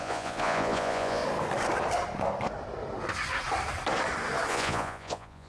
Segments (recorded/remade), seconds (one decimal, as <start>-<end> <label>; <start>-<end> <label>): 0.0-1.2 remade; 1.2-4.5 recorded; 4.5-5.5 remade